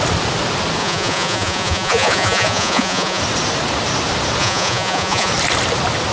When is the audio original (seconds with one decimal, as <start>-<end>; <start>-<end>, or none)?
0.0-0.8; 3.2-4.4; 5.3-6.1